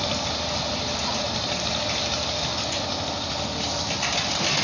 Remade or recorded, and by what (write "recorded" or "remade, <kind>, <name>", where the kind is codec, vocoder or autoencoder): recorded